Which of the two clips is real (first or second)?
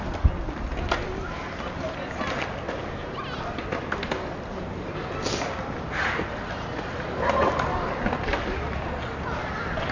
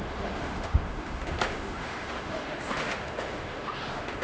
first